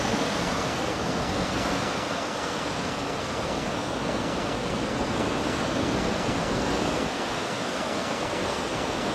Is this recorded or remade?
remade